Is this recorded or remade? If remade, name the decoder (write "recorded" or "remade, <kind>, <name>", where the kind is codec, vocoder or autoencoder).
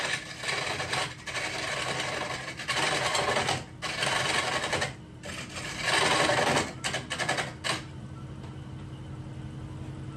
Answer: recorded